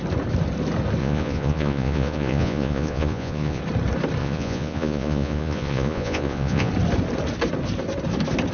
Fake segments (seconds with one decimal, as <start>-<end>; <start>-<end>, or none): 1.0-3.6; 4.2-6.7